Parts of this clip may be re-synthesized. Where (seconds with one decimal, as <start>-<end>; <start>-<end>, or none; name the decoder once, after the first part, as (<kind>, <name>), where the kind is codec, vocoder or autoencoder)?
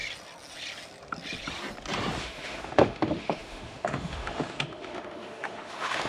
2.2-6.1 (autoencoder, DAC-VAE)